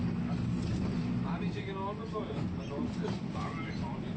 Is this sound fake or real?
real